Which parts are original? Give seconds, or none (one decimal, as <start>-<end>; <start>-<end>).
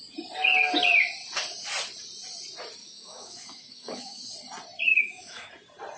0.0-2.8; 4.2-4.9; 5.5-6.0